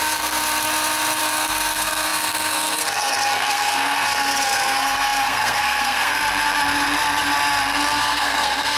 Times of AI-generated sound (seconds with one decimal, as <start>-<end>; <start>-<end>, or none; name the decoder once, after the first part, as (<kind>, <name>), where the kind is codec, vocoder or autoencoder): 0.0-0.4 (codec, SNAC); 1.2-6.2; 8.0-8.8